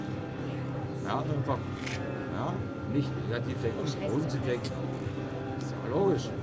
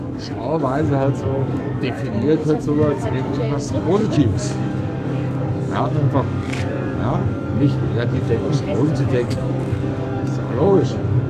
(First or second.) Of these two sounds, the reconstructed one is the second